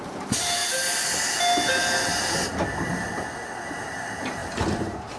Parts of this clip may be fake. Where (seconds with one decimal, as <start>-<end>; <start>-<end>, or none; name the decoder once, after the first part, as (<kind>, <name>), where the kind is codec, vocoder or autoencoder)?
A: 0.0-0.6 (vocoder, BigVGAN v2); 3.7-5.2